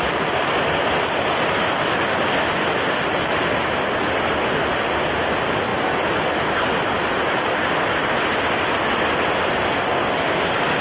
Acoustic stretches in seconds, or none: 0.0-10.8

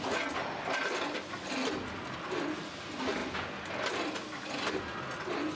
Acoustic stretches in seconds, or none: 0.0-5.6

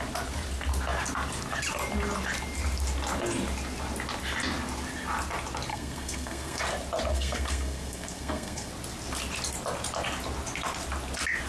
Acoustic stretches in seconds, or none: 0.0-5.7; 6.6-7.1; 8.7-11.5